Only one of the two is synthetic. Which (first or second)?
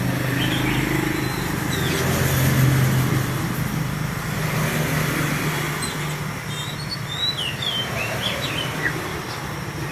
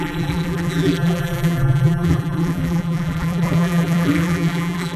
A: second